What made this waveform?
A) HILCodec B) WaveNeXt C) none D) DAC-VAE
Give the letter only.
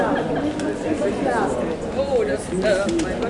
C